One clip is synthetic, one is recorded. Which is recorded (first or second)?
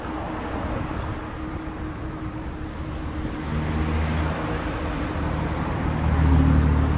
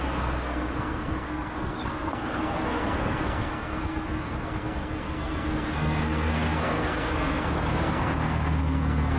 first